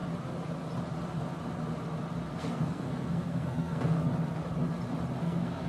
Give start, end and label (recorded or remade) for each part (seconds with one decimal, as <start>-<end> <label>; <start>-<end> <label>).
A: 0.0-2.3 recorded; 2.3-4.1 remade; 4.1-5.2 recorded; 5.2-5.7 remade